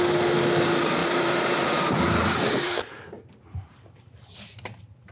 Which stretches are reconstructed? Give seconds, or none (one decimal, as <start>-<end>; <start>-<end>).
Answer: 1.0-2.9